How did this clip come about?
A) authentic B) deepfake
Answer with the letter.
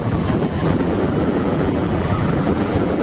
B